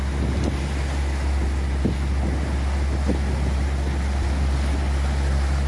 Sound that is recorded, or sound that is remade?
recorded